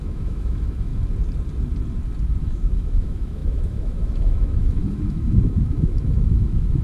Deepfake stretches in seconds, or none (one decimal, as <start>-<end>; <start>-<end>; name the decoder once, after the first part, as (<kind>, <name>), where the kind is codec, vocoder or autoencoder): 0.0-0.9 (autoencoder, DAC-VAE); 2.4-6.8